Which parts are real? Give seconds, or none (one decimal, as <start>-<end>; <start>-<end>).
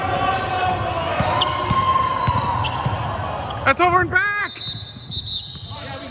0.0-6.1